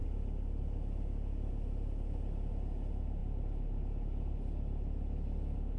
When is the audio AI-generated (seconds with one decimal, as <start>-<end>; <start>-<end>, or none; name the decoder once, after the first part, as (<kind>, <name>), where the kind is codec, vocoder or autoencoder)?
none